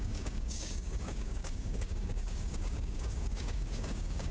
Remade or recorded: remade